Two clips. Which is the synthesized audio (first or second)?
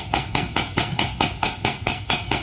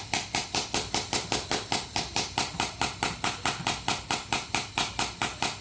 first